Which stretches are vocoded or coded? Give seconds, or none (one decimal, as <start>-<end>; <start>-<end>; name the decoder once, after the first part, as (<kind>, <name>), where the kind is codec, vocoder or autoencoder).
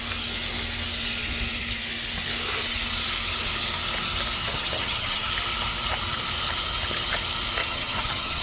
4.4-5.3 (vocoder, HiFi-GAN); 7.6-8.4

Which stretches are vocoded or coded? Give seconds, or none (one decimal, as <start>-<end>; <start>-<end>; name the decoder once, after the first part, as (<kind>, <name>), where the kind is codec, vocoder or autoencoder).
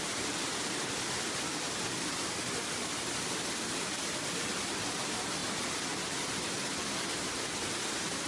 none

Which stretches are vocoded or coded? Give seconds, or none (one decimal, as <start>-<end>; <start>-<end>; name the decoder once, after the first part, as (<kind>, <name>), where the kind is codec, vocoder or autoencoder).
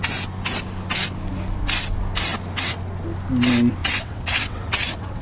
3.8-5.2 (vocoder, WaveNeXt)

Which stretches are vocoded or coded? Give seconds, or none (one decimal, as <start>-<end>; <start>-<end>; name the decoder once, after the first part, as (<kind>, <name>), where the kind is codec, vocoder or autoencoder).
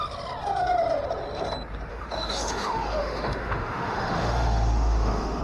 1.9-5.4 (autoencoder, DAC-VAE)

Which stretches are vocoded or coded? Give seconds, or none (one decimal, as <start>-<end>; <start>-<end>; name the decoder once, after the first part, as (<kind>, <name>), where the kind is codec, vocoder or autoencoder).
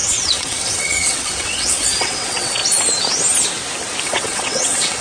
0.0-2.6 (vocoder, WaveNeXt); 4.0-5.0